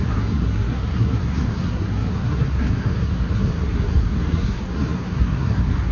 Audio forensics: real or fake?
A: fake